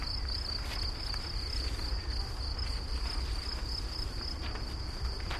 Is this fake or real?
real